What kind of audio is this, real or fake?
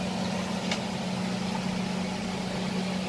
real